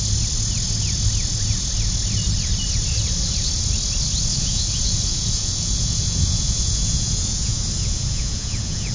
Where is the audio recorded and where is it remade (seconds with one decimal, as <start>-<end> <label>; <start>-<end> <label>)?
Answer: 0.0-4.3 recorded; 4.3-8.9 remade